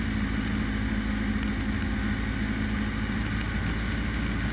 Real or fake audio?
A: real